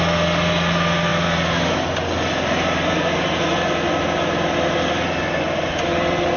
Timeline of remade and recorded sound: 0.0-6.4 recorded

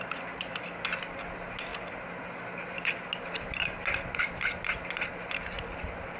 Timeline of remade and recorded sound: 0.0-6.2 recorded

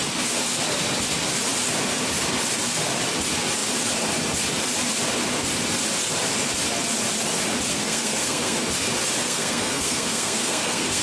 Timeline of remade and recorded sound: 0.0-7.7 recorded; 7.7-8.6 remade; 8.6-9.2 recorded; 9.2-11.0 remade

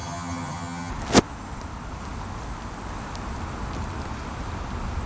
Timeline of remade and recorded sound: 0.0-0.9 remade; 0.9-5.1 recorded

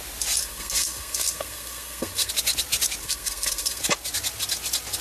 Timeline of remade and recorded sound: 0.0-0.4 recorded; 0.4-2.3 remade; 2.3-3.0 recorded; 3.0-3.8 remade; 3.8-5.0 recorded

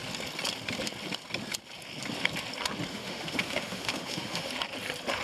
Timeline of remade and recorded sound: 0.0-2.9 recorded; 2.9-4.5 remade; 4.5-5.2 recorded